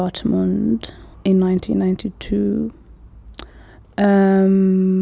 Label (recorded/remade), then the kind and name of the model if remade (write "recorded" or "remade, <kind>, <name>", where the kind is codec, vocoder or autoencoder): recorded